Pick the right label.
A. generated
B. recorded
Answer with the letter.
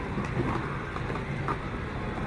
B